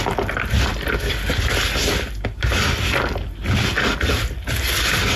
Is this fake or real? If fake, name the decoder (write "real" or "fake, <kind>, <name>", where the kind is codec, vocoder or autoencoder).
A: real